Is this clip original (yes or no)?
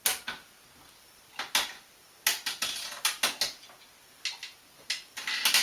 yes